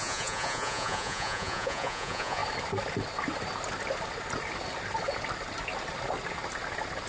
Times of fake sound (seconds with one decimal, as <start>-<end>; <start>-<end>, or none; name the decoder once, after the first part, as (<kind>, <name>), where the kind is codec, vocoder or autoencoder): 0.0-2.4 (vocoder, Vocos)